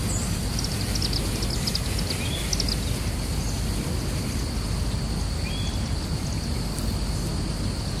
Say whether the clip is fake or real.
real